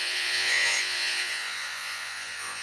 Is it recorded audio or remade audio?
remade